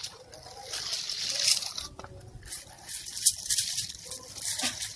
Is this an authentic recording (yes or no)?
yes